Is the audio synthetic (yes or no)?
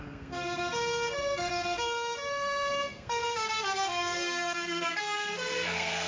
yes